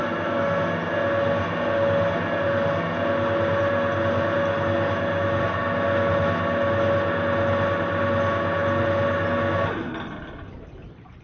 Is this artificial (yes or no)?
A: no